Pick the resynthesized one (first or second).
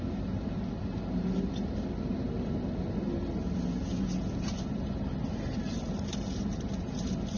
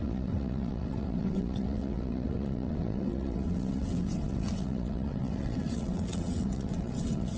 second